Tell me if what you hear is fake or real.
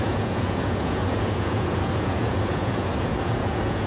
fake